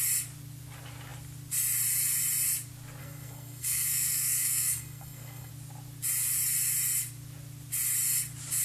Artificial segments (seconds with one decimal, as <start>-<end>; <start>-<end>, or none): 3.0-5.5